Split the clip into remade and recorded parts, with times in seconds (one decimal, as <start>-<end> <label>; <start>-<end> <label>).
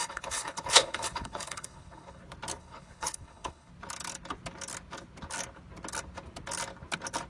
0.0-2.2 remade; 2.2-2.6 recorded; 2.6-3.7 remade; 3.7-7.3 recorded